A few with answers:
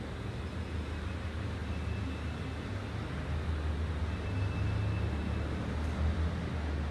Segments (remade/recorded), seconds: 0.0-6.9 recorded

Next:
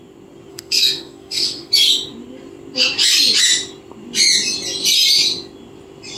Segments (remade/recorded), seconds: 0.0-0.5 recorded; 0.5-1.7 remade; 1.7-6.2 recorded

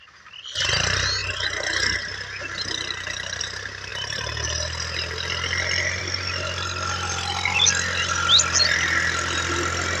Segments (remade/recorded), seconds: 0.0-10.0 recorded